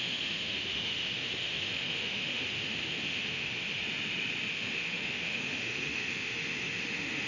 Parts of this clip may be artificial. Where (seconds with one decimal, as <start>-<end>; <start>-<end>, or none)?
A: 0.0-3.8; 4.5-7.3